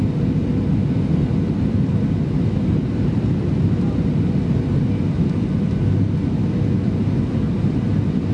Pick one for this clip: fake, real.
real